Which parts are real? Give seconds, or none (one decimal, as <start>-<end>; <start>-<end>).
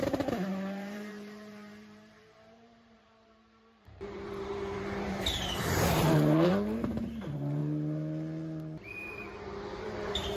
7.6-9.1